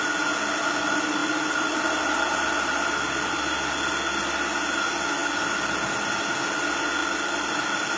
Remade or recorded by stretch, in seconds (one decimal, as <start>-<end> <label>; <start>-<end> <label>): 0.0-1.2 recorded; 1.2-3.0 remade; 3.0-7.0 recorded; 7.0-7.5 remade; 7.5-8.0 recorded